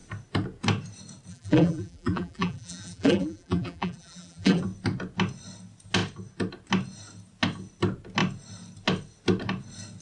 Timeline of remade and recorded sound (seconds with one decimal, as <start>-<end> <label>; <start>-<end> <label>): 0.0-1.3 recorded; 1.3-4.6 remade; 4.6-10.0 recorded